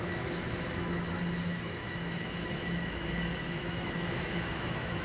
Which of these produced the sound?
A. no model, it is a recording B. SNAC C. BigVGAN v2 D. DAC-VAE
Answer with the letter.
D